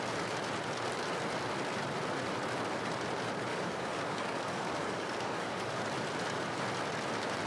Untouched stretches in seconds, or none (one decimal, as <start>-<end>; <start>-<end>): 0.0-3.5; 5.8-7.5